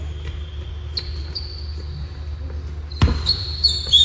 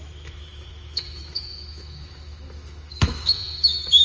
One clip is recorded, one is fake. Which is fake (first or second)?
second